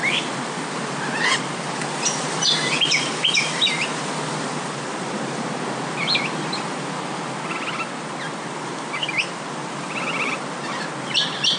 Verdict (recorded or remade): recorded